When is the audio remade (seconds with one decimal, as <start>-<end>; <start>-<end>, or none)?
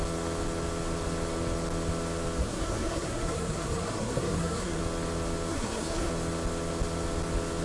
2.4-4.8; 5.5-6.1